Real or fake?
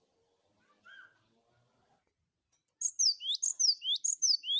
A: real